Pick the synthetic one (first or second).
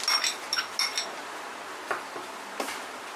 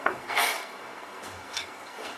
second